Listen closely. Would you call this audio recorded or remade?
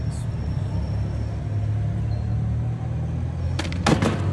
recorded